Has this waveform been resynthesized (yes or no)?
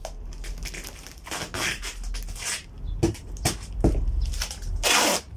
no